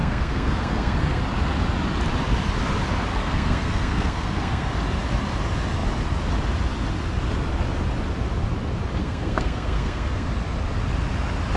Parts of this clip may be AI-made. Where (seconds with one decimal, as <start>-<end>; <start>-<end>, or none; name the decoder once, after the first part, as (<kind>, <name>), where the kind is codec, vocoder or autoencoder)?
0.0-1.2 (codec, SNAC); 3.1-4.7; 9.0-10.3